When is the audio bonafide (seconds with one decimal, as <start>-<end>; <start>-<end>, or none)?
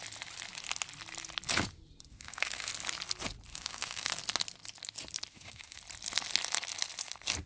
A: 0.0-2.1; 2.7-3.5; 4.1-5.3; 5.8-7.5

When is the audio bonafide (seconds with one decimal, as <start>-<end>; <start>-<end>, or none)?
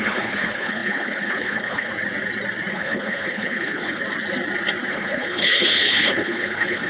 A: 1.9-2.7; 4.0-4.9